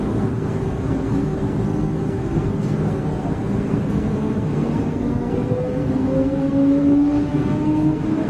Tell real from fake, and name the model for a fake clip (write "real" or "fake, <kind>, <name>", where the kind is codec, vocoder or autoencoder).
fake, codec, SNAC